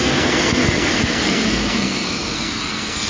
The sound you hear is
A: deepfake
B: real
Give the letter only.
A